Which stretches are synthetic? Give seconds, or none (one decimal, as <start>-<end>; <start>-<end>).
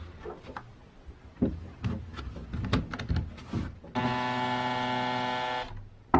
none